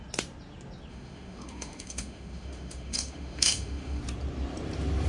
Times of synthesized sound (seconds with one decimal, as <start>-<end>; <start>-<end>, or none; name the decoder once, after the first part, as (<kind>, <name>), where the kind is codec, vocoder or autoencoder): 0.9-4.0 (autoencoder, DAC-VAE)